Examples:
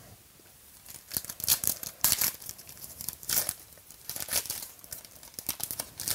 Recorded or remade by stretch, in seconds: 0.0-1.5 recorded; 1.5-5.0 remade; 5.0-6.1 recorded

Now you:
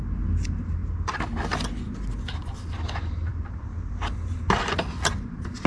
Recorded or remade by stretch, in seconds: 0.0-5.7 recorded

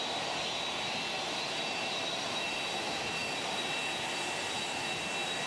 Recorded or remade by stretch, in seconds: 0.0-5.5 remade

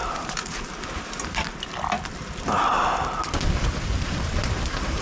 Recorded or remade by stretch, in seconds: 0.0-1.7 remade; 1.7-3.7 recorded; 3.7-5.0 remade

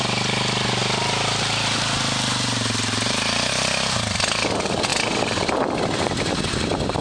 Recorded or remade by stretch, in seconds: 0.0-0.8 remade; 0.8-3.5 recorded; 3.5-4.9 remade; 4.9-6.6 recorded; 6.6-7.0 remade

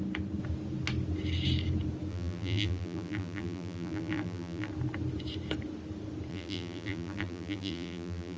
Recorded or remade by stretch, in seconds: 0.0-2.1 recorded; 2.1-4.7 remade; 4.7-6.3 recorded; 6.3-8.4 remade